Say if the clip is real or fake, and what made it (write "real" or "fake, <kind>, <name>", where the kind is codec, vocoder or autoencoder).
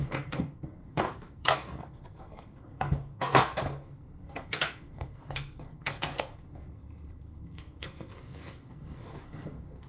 fake, codec, SNAC